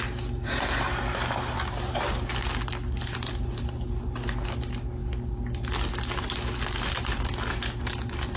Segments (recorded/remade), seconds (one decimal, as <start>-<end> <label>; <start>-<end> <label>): 0.0-8.4 recorded